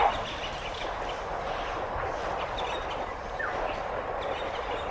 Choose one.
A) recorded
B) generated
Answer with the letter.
A